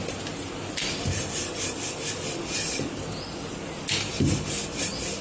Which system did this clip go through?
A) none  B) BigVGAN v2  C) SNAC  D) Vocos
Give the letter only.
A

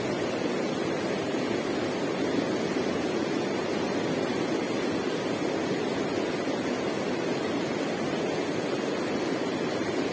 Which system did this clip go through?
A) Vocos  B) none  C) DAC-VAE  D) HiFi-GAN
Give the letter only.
B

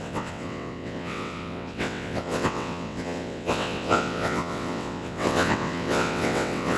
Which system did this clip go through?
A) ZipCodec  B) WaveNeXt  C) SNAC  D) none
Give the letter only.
B